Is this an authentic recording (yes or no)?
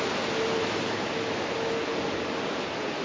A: yes